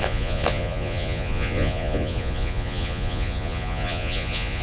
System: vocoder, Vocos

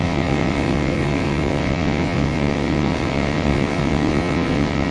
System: vocoder, WaveNeXt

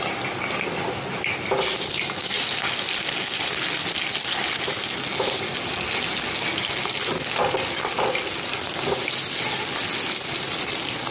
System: none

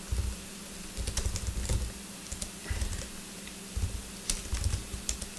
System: none